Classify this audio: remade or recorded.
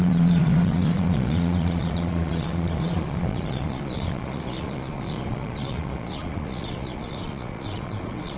remade